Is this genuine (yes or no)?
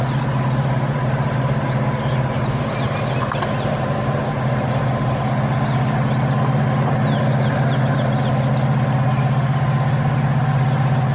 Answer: yes